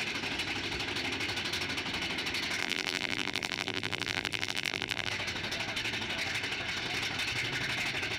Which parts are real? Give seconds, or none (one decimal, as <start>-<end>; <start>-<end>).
0.0-2.6; 5.1-8.2